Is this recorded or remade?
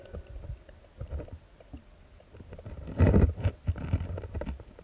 recorded